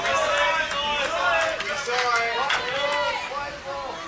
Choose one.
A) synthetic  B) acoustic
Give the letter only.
B